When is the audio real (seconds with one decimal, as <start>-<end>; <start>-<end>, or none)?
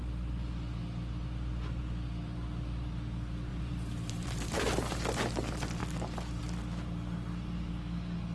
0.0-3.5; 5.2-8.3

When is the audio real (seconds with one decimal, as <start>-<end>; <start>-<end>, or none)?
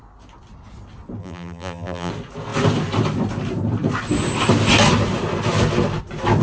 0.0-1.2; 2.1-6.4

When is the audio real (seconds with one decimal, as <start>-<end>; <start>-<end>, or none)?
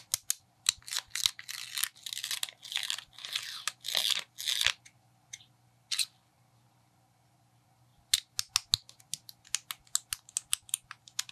0.0-11.3